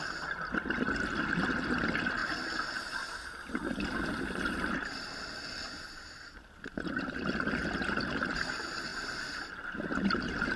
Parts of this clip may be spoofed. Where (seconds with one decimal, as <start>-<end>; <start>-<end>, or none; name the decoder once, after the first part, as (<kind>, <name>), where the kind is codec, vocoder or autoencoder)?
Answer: 2.2-2.8 (vocoder, BigVGAN v2); 8.9-9.5